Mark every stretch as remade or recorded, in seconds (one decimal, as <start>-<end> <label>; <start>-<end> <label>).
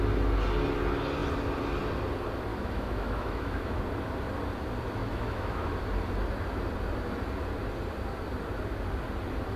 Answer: 0.0-2.5 recorded; 2.5-3.8 remade; 3.8-5.0 recorded; 5.0-5.8 remade; 5.8-9.6 recorded